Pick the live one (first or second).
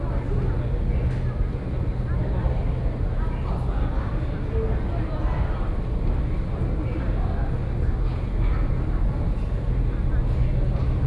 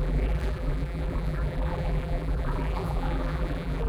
first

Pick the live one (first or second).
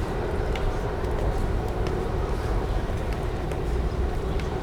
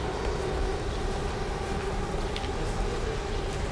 second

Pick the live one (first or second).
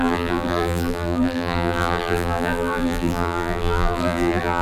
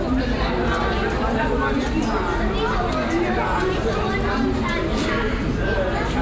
second